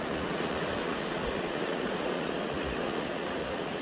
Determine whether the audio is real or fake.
fake